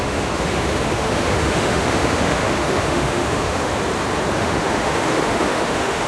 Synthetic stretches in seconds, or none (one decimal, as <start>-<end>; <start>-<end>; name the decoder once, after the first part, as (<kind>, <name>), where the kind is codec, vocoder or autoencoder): 0.0-3.7 (autoencoder, DAC-VAE); 4.4-6.1